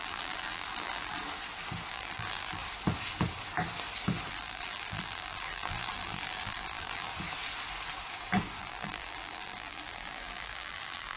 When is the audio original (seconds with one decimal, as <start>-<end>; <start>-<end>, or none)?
1.2-1.9; 2.6-4.3; 7.1-8.6